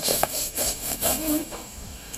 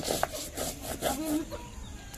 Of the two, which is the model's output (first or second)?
first